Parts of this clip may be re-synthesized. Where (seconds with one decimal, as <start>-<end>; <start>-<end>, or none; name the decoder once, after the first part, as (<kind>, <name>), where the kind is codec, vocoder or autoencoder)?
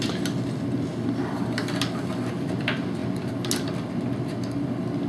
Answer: none